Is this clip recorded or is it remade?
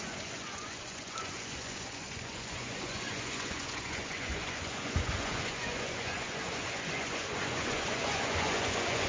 remade